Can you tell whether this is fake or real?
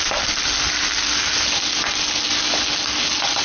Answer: real